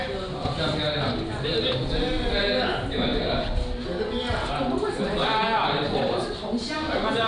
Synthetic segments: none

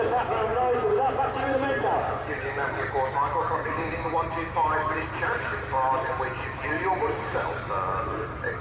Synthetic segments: 0.0-0.5 (vocoder, BigVGAN v2); 2.0-8.6

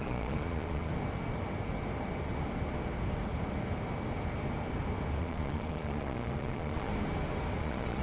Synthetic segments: 0.0-0.9 (vocoder, Vocos); 5.2-6.9; 7.6-8.0

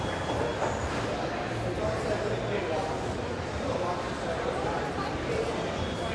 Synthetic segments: 0.0-0.5 (vocoder, BigVGAN v2); 2.6-6.1

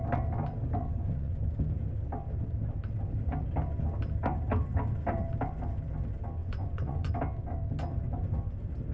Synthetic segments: 0.8-1.4 (vocoder, Vocos); 6.4-7.1